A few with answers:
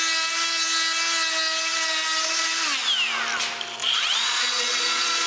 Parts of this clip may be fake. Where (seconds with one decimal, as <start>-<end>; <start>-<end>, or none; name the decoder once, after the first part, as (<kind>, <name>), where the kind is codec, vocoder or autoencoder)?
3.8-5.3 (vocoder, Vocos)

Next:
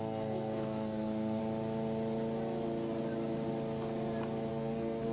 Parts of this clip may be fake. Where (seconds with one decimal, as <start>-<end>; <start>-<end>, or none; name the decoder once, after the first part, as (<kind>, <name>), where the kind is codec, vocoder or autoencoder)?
0.0-1.4 (codec, SNAC); 4.5-5.1

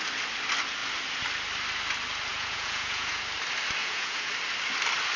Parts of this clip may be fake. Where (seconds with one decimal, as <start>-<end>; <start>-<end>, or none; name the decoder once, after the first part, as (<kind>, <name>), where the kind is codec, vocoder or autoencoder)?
2.3-3.2 (vocoder, Vocos); 3.8-4.3

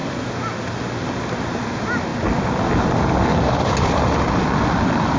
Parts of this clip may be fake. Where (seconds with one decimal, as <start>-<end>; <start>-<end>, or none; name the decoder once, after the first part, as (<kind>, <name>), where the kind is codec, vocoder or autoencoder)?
none

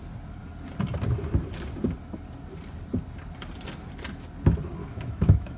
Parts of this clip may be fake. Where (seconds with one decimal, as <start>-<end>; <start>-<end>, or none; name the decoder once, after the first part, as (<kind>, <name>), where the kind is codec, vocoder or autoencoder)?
4.8-5.6 (autoencoder, DAC-VAE)

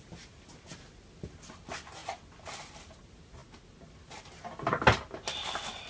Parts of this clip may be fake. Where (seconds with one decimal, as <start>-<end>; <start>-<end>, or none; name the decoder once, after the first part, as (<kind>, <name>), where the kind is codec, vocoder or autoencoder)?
none